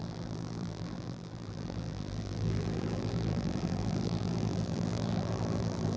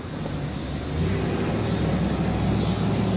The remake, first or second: first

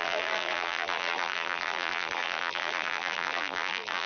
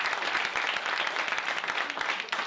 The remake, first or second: first